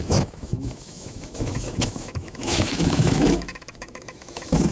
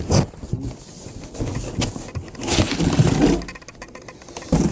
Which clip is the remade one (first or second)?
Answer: first